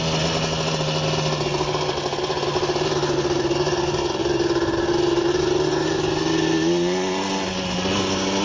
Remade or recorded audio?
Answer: recorded